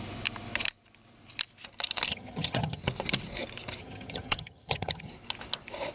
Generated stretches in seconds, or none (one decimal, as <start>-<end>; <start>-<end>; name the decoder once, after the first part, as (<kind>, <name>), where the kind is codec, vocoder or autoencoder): 2.1-2.8 (vocoder, HiFi-GAN); 3.8-5.1